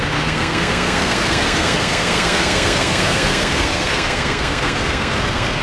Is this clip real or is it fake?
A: fake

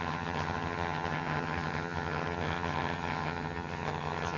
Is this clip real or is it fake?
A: fake